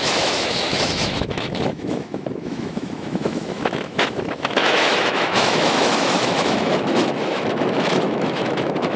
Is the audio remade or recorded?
remade